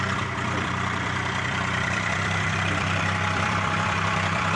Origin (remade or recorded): remade